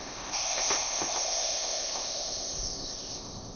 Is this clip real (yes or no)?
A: no